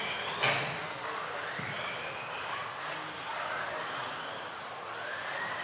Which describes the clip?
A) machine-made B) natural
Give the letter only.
B